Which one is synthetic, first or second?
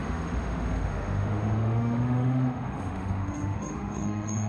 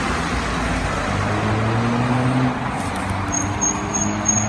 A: first